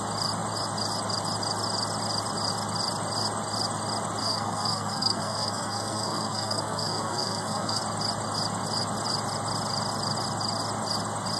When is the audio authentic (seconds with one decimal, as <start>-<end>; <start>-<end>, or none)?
0.0-4.2; 7.8-11.4